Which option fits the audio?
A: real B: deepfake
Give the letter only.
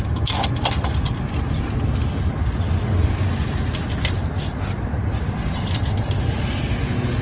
A